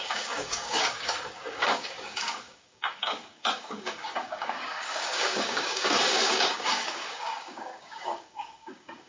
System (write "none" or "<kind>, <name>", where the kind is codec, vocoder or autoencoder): codec, DAC